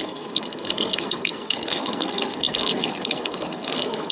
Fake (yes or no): yes